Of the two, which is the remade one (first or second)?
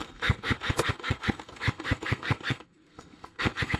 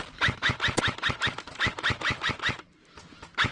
first